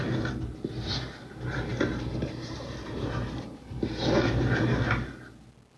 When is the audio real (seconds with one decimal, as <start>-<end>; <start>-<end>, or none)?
0.0-1.7; 3.9-5.8